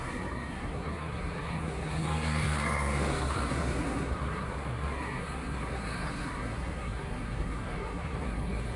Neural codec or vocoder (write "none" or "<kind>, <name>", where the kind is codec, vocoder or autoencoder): codec, SNAC